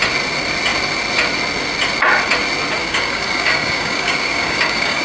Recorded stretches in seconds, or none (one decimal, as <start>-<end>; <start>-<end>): 0.0-2.8